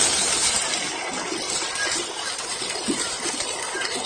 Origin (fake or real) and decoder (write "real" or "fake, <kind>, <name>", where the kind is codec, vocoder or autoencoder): real